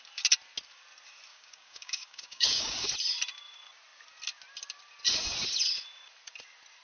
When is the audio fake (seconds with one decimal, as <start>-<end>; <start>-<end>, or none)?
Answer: 1.3-2.9